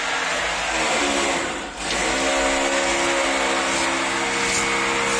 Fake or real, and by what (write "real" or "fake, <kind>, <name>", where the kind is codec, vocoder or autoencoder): real